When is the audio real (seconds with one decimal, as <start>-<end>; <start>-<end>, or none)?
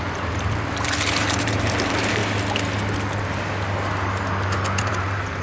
2.2-4.8